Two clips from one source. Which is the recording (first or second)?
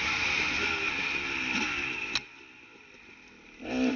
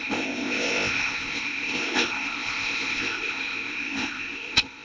first